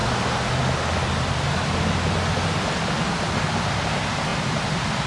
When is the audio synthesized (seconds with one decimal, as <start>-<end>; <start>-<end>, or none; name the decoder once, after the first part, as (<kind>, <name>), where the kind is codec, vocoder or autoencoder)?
none